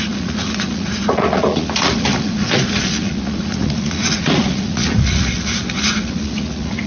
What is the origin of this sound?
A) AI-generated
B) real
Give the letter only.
A